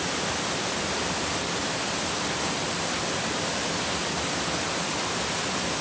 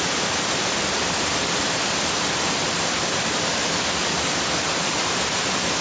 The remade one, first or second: second